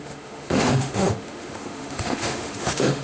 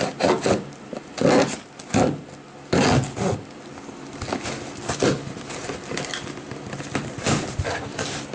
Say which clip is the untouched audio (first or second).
second